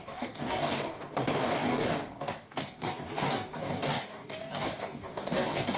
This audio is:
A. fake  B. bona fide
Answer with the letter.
A